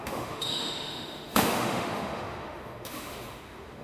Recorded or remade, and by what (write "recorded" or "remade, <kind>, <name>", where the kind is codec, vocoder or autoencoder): remade, autoencoder, DAC-VAE